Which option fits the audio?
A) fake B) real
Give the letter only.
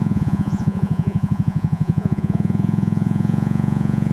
A